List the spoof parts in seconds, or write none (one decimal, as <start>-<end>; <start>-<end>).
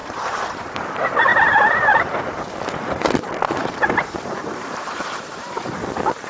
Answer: 0.0-0.8; 3.6-5.6